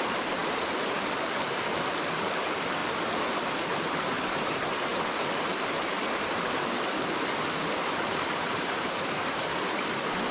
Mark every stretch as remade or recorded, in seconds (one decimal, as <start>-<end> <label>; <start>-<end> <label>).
0.0-4.9 recorded; 4.9-9.9 remade; 9.9-10.3 recorded